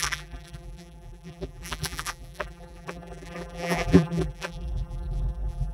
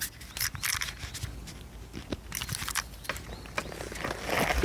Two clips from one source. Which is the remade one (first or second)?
first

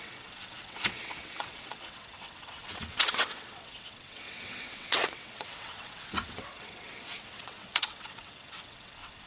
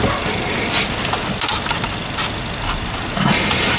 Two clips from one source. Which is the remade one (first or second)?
first